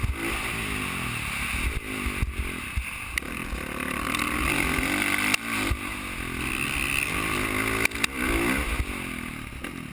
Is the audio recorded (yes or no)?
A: yes